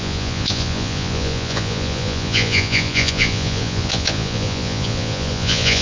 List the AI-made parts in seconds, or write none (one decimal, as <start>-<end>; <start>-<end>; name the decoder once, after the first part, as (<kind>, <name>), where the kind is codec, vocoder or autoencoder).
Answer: 0.0-5.8 (vocoder, Vocos)